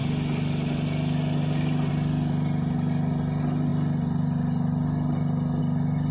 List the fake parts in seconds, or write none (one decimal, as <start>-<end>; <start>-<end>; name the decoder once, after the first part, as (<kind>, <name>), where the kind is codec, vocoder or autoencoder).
none